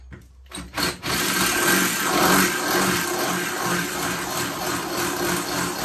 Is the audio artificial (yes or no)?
no